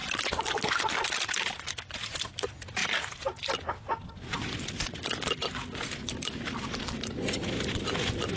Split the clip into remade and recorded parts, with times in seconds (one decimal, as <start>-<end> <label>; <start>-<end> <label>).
0.0-8.4 recorded

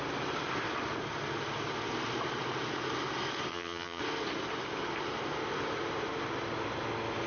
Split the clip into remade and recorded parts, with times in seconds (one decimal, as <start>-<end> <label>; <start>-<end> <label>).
0.0-3.5 recorded; 3.5-4.0 remade; 4.0-7.3 recorded

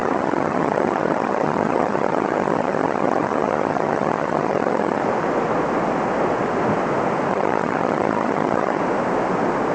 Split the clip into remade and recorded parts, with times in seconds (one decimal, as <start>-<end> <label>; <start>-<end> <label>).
0.0-5.0 remade; 5.0-7.3 recorded; 7.3-8.8 remade; 8.8-9.7 recorded

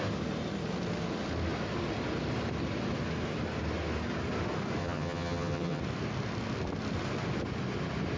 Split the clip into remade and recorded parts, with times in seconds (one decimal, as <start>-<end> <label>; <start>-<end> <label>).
0.0-4.8 recorded; 4.8-5.8 remade; 5.8-8.2 recorded

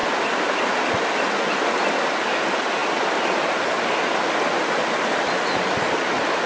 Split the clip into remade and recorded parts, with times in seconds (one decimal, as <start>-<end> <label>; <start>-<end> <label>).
0.0-6.5 recorded

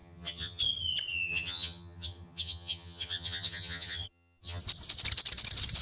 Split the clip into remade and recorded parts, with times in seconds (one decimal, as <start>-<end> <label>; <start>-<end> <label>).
0.0-0.6 remade; 0.6-1.1 recorded; 1.1-4.6 remade; 4.6-5.8 recorded

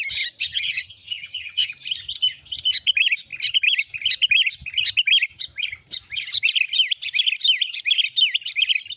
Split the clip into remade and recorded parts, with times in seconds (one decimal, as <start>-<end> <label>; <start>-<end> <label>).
0.0-0.4 recorded; 0.4-1.7 remade; 1.7-9.0 recorded